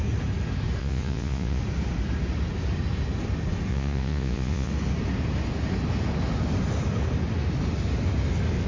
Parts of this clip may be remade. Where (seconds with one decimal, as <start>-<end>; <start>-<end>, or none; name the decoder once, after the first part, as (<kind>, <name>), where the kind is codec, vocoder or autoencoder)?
0.8-1.6 (vocoder, Vocos); 3.7-4.7